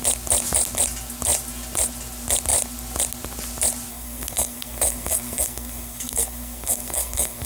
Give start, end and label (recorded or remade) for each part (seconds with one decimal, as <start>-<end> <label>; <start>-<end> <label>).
0.0-3.9 recorded; 3.9-7.5 remade